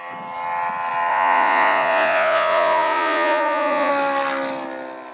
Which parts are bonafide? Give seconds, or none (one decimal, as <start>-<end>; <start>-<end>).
0.0-1.1; 3.9-5.1

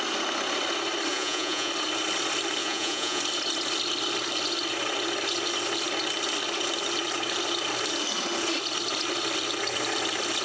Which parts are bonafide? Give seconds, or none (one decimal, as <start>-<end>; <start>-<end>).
0.0-1.1; 1.7-2.6; 3.2-10.4